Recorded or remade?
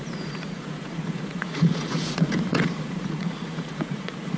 remade